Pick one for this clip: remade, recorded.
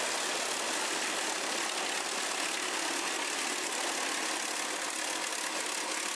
recorded